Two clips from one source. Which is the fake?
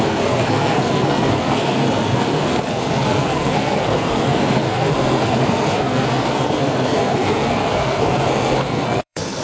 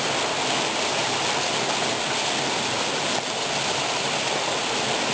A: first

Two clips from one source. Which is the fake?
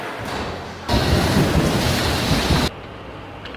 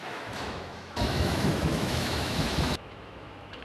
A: second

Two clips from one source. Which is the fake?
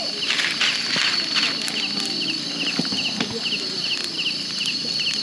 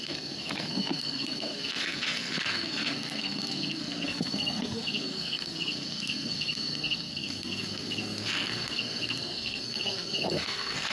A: second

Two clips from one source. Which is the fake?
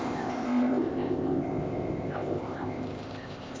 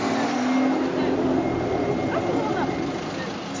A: first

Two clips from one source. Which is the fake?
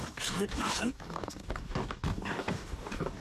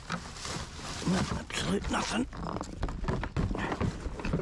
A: first